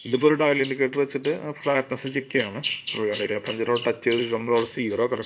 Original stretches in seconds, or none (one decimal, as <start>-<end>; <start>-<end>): 0.6-1.6; 3.5-4.2